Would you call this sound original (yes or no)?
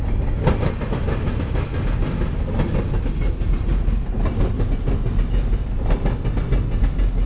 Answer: yes